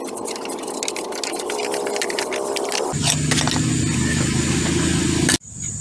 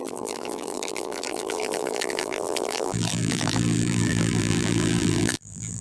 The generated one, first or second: second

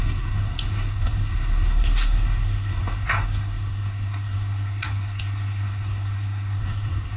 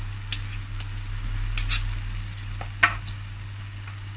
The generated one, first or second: first